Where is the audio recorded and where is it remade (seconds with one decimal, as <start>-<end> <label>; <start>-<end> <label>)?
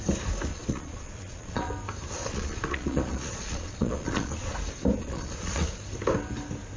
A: 0.0-0.5 recorded; 0.5-1.7 remade; 1.7-2.2 recorded; 2.2-4.5 remade; 4.5-5.0 recorded; 5.0-5.7 remade; 5.7-6.8 recorded